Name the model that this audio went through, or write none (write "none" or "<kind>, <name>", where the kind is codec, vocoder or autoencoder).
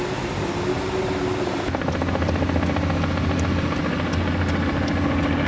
none